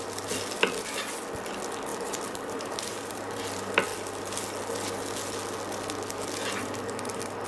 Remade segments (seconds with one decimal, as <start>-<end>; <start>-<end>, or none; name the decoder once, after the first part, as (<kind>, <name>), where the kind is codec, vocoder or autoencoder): 1.9-3.4 (vocoder, BigVGAN v2)